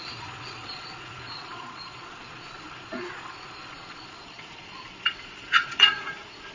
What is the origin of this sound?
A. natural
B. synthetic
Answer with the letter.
B